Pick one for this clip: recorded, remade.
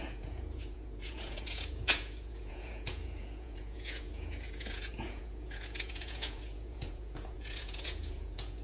remade